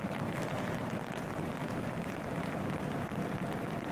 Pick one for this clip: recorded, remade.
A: remade